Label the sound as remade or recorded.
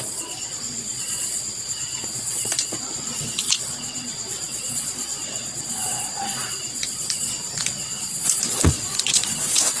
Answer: remade